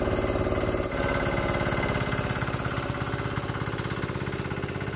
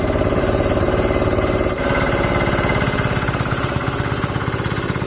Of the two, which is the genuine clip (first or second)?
first